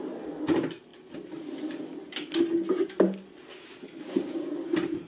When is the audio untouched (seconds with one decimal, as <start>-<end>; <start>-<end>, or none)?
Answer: 0.0-5.1